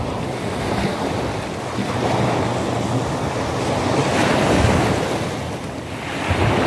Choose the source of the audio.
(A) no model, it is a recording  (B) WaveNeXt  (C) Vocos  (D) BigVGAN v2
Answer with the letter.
A